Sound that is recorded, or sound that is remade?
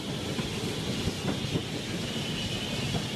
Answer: recorded